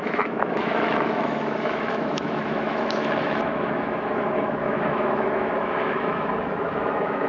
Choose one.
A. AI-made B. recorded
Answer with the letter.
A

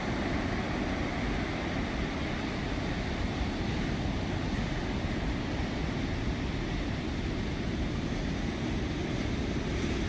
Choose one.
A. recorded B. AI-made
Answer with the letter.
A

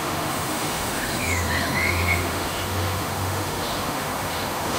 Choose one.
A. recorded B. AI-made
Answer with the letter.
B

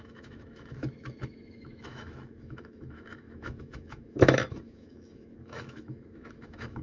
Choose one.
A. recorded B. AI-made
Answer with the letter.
B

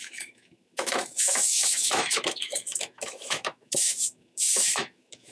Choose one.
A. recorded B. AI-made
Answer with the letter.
B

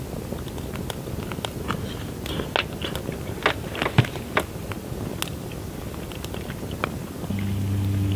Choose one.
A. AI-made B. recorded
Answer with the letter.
B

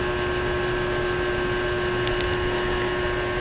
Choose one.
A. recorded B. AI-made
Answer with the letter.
A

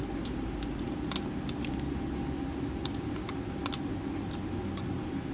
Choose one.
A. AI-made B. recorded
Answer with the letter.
B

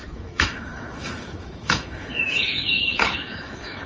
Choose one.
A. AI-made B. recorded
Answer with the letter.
A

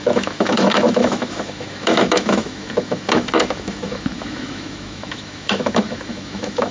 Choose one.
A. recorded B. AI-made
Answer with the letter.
B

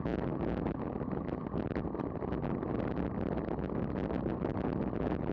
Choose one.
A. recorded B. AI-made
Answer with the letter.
A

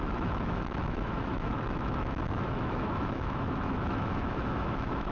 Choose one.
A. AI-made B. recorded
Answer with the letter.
A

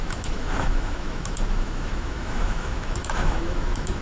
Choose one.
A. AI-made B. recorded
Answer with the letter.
A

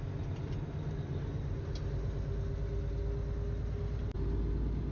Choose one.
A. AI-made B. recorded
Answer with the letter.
B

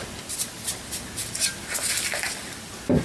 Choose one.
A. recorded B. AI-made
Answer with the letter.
A